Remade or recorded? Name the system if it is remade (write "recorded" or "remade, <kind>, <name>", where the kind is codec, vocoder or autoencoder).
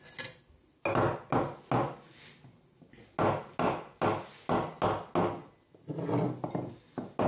recorded